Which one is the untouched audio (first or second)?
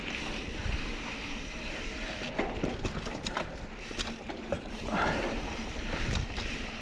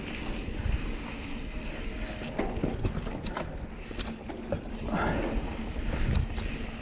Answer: second